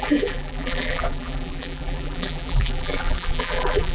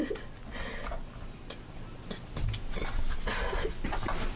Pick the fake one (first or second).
first